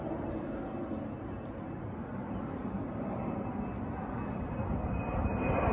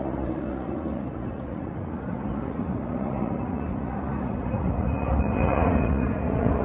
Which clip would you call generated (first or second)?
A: second